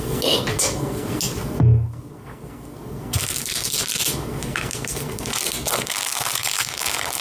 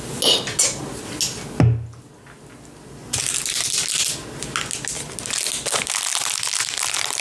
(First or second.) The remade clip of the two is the first